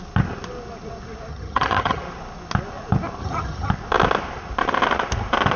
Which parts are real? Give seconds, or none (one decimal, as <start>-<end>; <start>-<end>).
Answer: 0.0-1.3; 2.0-3.2; 3.7-5.6